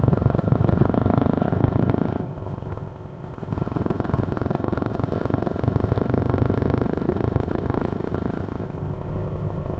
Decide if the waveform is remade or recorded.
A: remade